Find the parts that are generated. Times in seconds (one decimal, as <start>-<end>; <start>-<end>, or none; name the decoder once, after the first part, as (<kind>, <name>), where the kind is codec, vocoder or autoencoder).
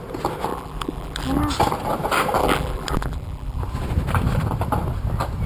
0.5-1.4 (vocoder, BigVGAN v2); 2.4-3.6